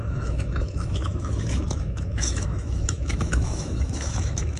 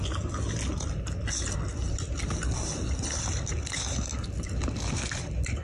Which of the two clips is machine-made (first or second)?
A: first